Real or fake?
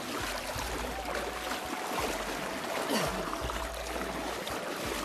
real